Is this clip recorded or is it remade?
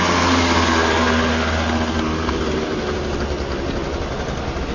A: recorded